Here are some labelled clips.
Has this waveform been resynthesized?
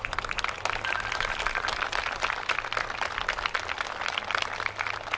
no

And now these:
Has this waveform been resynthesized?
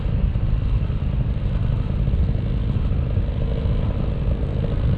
no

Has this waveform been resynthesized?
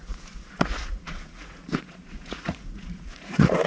yes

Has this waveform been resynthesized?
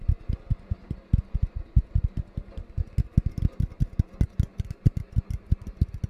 no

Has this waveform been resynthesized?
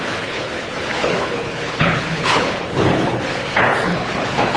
yes